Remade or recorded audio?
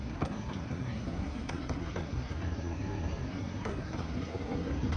remade